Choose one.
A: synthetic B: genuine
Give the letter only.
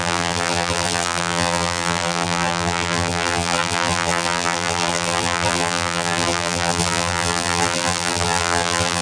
A